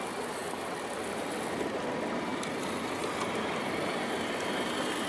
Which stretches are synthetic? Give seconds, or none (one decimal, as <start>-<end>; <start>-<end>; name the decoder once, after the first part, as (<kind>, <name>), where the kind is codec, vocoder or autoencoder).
2.3-3.0 (vocoder, BigVGAN v2)